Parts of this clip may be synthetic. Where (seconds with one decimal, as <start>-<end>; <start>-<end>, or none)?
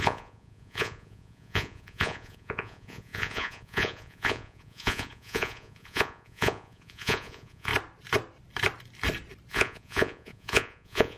0.0-7.7; 9.5-11.2